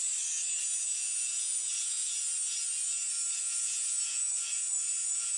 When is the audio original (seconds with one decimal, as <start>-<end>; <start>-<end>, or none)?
0.0-0.6; 2.0-3.4